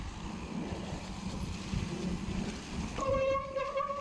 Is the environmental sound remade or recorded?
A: recorded